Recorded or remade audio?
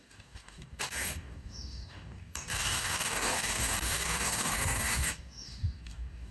remade